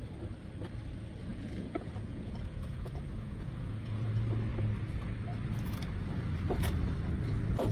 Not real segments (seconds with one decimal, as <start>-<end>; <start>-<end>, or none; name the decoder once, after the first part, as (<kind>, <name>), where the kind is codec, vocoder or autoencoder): 1.3-4.1 (vocoder, Vocos)